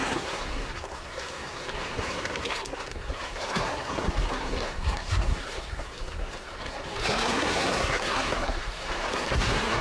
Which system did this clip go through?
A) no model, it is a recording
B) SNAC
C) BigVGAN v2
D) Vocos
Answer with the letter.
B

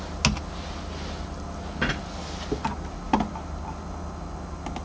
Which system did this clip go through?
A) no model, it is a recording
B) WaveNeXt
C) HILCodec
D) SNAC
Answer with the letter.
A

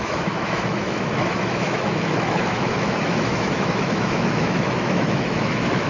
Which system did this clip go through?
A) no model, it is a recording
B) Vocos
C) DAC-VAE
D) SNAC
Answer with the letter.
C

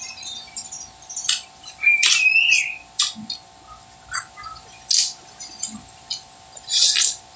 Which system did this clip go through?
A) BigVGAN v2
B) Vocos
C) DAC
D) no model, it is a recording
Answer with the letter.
D